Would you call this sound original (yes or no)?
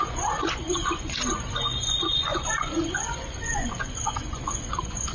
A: no